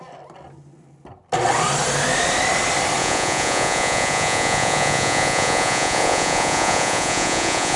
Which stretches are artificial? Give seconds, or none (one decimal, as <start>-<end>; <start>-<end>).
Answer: 3.0-7.8